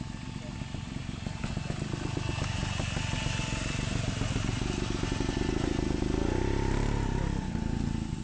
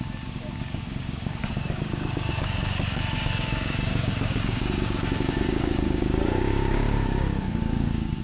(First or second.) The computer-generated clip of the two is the second